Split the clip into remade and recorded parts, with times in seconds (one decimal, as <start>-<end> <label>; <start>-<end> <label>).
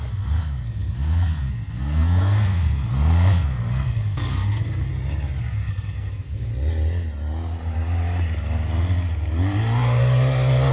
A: 0.0-4.9 remade; 4.9-5.4 recorded; 5.4-6.5 remade; 6.5-10.7 recorded